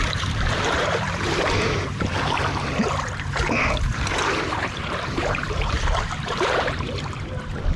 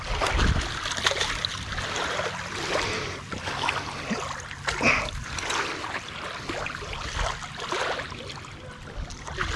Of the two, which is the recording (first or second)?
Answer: second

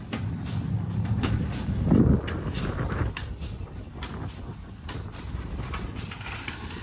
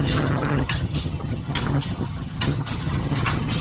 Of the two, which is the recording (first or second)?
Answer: first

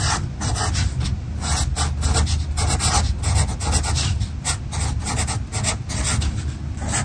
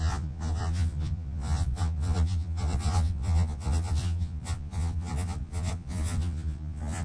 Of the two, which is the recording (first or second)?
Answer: first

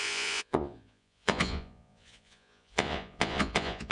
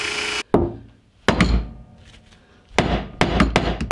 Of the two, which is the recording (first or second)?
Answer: second